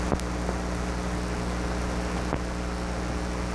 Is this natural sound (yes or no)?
yes